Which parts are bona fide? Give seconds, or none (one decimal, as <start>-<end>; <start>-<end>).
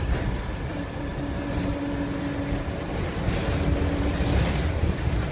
0.0-5.3